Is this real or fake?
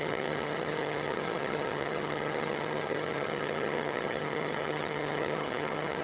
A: fake